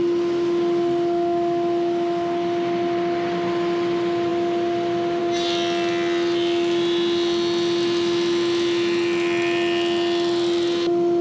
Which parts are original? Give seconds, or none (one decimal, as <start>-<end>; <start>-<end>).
0.0-11.2